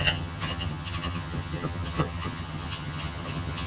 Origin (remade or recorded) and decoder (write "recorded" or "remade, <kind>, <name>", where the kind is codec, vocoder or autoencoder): remade, vocoder, HiFi-GAN